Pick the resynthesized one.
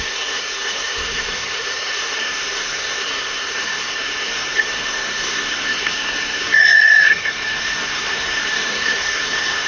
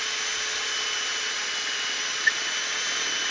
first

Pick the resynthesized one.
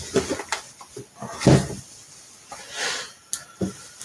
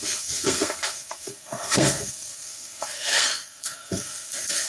second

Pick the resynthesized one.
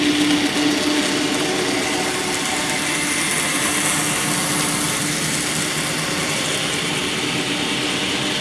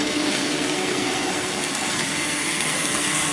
second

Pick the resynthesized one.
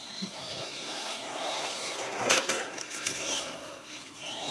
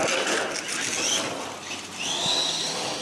first